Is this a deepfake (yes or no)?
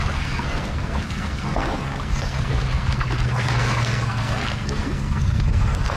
yes